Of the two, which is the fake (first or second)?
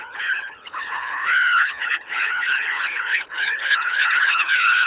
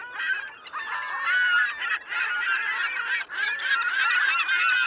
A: first